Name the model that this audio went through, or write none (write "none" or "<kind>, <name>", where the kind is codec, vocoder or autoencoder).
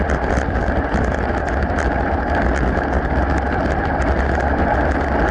none